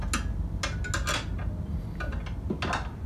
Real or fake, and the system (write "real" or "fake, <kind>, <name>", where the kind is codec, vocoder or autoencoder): real